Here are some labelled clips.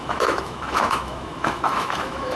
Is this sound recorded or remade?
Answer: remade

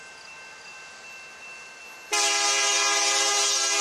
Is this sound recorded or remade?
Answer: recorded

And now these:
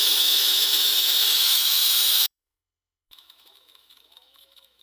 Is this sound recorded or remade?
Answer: remade